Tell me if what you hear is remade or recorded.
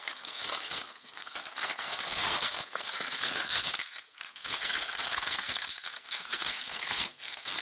remade